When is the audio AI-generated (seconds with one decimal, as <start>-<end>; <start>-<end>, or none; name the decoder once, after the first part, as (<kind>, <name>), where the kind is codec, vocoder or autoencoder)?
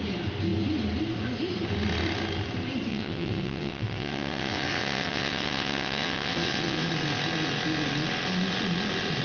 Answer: 2.9-6.9 (vocoder, WaveNeXt)